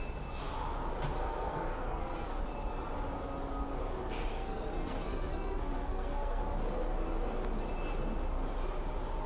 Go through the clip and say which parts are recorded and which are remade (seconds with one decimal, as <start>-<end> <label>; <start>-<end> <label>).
0.0-1.2 recorded; 1.2-2.4 remade; 2.4-4.3 recorded; 4.3-6.4 remade; 6.4-9.3 recorded